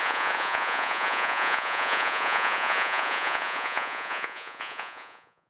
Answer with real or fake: fake